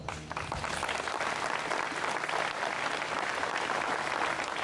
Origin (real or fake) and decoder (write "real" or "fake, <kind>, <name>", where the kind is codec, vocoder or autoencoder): real